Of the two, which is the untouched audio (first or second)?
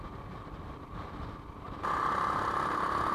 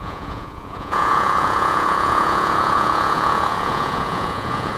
first